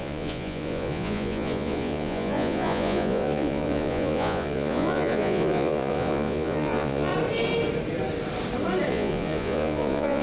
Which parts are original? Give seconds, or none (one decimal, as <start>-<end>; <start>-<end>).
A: 7.1-8.9